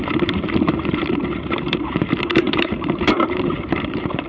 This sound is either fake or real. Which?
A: fake